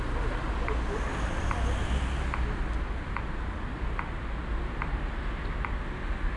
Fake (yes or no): no